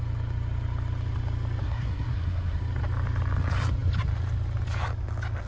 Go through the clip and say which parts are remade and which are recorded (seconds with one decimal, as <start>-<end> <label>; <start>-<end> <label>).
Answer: 0.0-1.6 recorded; 1.6-2.6 remade; 2.6-5.5 recorded